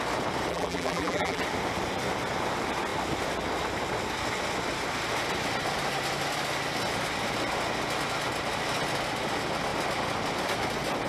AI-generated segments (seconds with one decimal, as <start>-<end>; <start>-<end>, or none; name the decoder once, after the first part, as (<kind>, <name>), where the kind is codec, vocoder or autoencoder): 0.5-1.4 (vocoder, BigVGAN v2)